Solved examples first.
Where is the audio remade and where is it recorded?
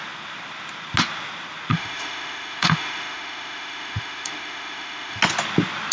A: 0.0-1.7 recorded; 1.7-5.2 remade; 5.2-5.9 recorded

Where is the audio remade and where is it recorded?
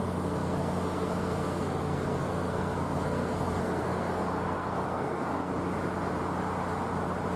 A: 0.0-5.5 remade; 5.5-7.4 recorded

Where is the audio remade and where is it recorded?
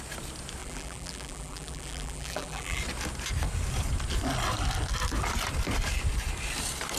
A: 0.0-0.6 recorded; 0.6-2.8 remade; 2.8-7.0 recorded